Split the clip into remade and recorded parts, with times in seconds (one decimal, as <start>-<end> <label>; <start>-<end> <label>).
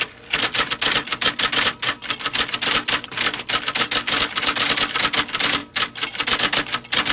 0.0-7.1 recorded